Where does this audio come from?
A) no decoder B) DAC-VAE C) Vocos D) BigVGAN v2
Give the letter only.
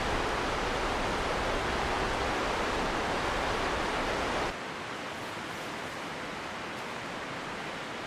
A